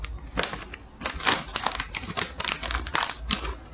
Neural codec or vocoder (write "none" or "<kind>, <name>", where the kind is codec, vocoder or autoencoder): none